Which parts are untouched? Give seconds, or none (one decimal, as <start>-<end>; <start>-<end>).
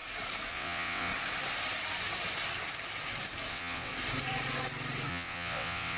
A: 0.0-0.5; 1.1-3.5; 3.9-5.1